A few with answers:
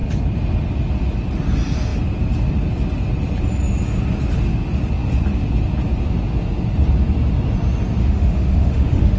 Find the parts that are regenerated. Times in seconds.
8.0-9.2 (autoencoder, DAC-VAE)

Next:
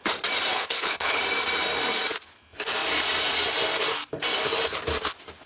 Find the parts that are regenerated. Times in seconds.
0.5-1.2 (codec, HILCodec)

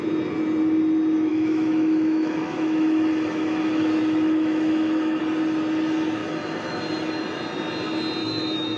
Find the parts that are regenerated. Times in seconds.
1.3-5.2 (autoencoder, DAC-VAE); 6.2-6.8; 8.2-8.8

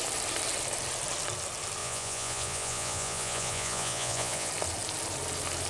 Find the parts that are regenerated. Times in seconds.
1.8-4.5 (vocoder, Vocos)

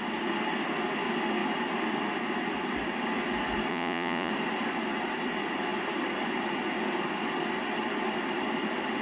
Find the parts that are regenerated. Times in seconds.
3.7-4.3 (vocoder, Vocos)